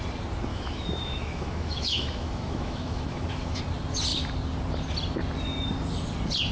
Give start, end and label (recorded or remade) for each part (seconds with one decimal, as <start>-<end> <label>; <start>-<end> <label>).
0.0-0.5 recorded; 0.5-3.6 remade; 3.6-6.5 recorded